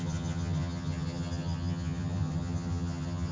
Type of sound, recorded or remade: remade